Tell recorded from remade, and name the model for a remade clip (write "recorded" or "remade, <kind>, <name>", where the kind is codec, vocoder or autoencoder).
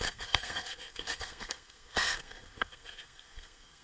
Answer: remade, codec, SNAC